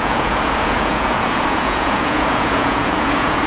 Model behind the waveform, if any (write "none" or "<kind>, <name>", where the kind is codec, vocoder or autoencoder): vocoder, Vocos